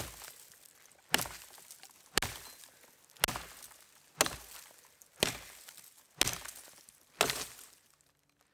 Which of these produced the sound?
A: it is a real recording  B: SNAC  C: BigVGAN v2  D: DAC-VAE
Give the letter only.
A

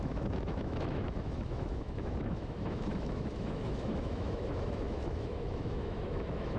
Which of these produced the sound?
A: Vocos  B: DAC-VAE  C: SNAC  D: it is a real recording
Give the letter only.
B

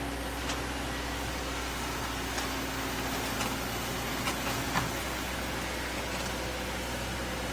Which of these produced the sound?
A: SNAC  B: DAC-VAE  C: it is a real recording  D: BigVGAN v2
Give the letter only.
C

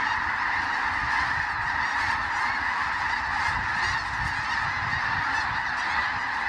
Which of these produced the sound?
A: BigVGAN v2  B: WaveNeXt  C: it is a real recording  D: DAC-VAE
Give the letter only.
C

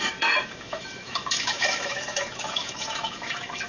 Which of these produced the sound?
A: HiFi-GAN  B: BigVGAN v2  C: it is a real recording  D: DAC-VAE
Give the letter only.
D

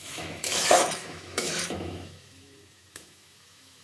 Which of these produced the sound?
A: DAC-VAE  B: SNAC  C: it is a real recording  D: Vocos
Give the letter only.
A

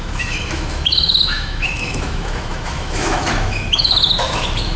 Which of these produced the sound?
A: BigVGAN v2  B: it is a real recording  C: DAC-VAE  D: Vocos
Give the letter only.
C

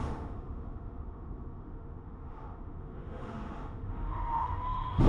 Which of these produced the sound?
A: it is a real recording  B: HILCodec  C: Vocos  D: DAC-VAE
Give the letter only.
D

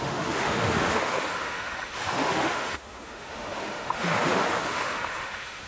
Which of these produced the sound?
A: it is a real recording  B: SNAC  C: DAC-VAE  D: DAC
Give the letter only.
C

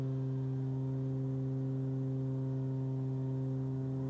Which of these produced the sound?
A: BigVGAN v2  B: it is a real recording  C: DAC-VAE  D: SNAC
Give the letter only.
B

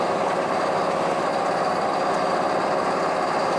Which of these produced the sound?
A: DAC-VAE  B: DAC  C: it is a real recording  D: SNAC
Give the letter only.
C